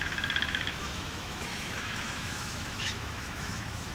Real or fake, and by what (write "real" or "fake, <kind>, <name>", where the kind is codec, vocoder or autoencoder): fake, autoencoder, DAC-VAE